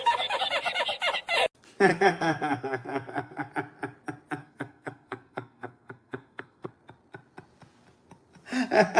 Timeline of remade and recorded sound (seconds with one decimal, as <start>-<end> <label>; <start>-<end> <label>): 0.0-1.9 recorded; 1.9-3.5 remade; 3.5-4.4 recorded; 4.4-6.7 remade; 6.7-9.0 recorded